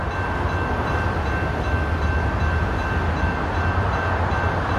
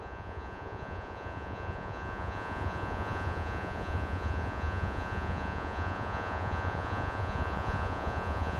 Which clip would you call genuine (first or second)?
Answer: first